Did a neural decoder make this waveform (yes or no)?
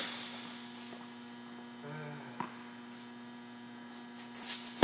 no